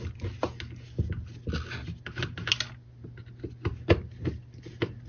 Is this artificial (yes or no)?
no